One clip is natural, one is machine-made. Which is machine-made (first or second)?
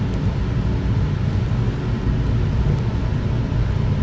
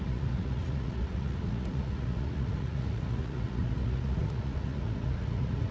second